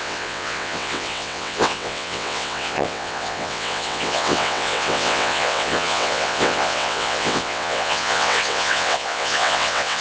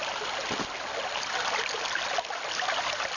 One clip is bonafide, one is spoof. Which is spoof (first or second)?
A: first